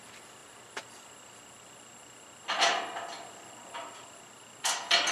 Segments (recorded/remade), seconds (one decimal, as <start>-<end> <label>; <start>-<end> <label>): 0.0-5.1 recorded